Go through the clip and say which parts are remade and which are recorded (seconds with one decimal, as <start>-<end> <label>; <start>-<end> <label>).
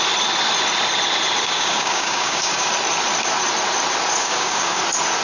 0.0-1.4 recorded; 1.4-2.7 remade; 2.7-4.2 recorded; 4.2-4.8 remade; 4.8-5.2 recorded